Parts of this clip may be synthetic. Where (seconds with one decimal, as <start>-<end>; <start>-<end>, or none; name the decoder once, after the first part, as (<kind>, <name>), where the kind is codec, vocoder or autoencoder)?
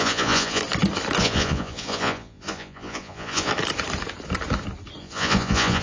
0.0-0.6 (vocoder, Vocos); 1.2-3.5; 5.0-5.8